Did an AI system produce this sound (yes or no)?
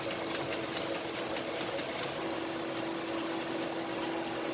no